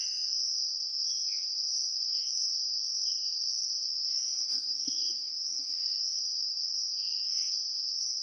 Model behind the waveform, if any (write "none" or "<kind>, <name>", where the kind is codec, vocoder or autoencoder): codec, SNAC